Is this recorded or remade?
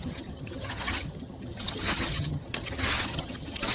remade